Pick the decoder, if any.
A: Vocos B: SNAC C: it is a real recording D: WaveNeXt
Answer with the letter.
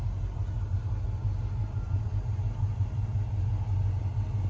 C